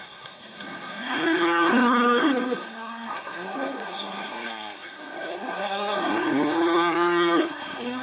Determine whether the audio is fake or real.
fake